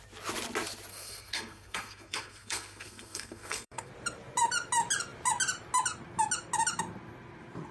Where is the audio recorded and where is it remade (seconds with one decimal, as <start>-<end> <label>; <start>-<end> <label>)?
0.0-0.9 recorded; 0.9-3.9 remade; 3.9-7.7 recorded